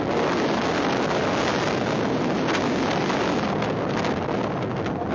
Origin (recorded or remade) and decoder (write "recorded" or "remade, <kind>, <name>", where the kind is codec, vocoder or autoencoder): recorded